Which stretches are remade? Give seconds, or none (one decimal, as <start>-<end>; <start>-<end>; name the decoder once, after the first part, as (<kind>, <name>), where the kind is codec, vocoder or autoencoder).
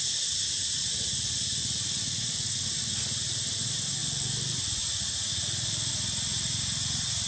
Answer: 1.6-3.0 (vocoder, Vocos); 4.0-5.9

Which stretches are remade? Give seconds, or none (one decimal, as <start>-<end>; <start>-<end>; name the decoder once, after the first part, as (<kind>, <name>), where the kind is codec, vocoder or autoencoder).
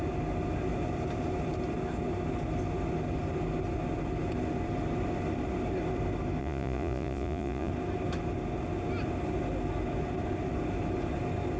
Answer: 6.4-7.7 (vocoder, Vocos)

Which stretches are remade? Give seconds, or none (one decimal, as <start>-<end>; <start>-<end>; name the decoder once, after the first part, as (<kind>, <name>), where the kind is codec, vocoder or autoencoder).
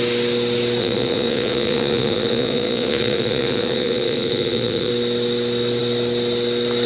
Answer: 0.8-4.9 (vocoder, Vocos)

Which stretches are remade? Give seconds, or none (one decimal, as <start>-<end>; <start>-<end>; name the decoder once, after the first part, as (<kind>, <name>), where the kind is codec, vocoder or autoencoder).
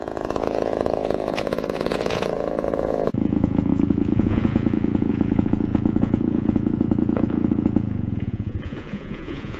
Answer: 0.0-9.6 (vocoder, Vocos)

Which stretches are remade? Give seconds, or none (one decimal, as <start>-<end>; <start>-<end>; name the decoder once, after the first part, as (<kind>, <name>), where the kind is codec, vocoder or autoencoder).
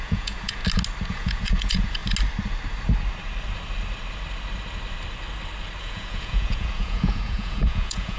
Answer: 0.0-0.6 (vocoder, Vocos); 1.1-2.0; 5.8-8.2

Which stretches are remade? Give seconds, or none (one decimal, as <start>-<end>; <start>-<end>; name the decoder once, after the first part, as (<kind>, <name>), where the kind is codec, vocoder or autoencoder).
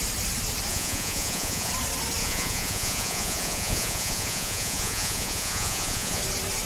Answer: 0.7-1.7 (vocoder, Vocos); 2.2-6.2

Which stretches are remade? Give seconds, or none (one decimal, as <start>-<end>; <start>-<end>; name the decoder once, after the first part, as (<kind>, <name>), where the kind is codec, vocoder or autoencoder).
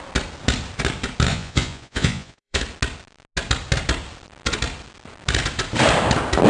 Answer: 1.3-2.6 (vocoder, Vocos)